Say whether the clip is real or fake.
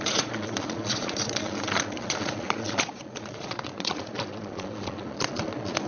fake